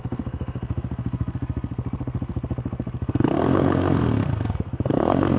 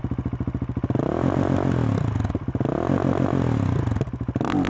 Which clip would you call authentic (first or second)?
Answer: second